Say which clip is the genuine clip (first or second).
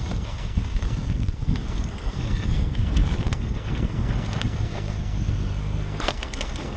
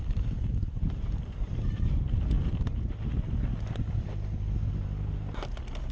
second